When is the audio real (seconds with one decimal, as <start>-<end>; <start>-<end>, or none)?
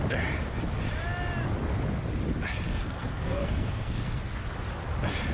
0.0-2.7; 4.3-5.3